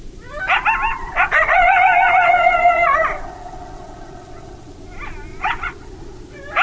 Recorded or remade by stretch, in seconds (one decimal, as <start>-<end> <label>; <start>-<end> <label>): 0.0-0.9 recorded; 0.9-4.7 remade; 4.7-5.3 recorded; 5.3-5.9 remade; 5.9-6.6 recorded